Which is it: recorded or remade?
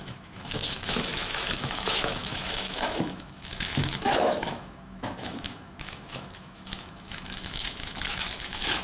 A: remade